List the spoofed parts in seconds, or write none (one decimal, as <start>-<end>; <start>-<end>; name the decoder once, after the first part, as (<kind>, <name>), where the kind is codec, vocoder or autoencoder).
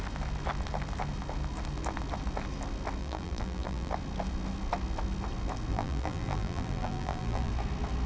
3.0-3.9 (vocoder, BigVGAN v2); 5.7-7.5